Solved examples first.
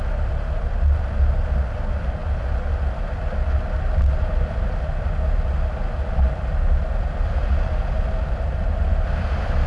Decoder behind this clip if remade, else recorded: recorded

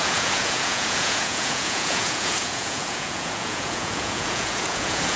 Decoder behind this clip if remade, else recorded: remade, vocoder, Vocos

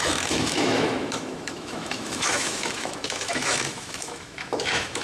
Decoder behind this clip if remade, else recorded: remade, autoencoder, DAC-VAE